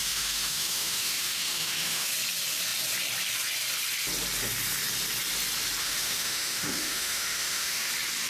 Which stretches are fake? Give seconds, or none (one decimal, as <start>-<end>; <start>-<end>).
0.0-2.1; 5.8-7.9